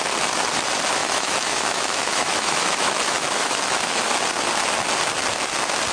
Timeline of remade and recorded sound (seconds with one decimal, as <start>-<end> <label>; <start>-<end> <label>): 0.0-1.0 recorded; 1.0-4.1 remade; 4.1-5.9 recorded